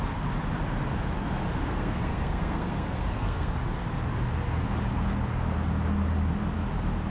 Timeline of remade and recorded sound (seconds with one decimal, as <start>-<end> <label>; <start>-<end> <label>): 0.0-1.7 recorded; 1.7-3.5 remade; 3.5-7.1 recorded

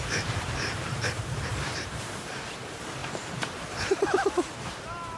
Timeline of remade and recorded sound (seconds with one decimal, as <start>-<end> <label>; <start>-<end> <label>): 0.0-5.2 remade

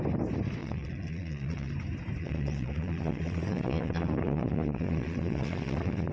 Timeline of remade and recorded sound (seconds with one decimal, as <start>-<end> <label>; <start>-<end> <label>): 0.0-0.6 recorded; 0.6-1.7 remade; 1.7-2.2 recorded; 2.2-6.1 remade

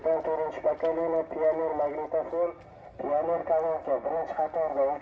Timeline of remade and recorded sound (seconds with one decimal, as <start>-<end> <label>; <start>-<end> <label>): 0.0-5.0 recorded